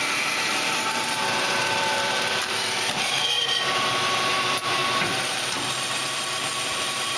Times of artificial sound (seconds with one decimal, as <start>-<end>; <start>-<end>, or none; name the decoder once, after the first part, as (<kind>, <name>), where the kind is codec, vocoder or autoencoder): 0.0-7.2 (vocoder, BigVGAN v2)